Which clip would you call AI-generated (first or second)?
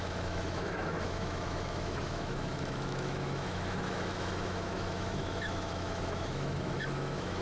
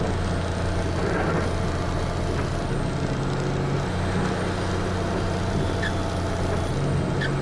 first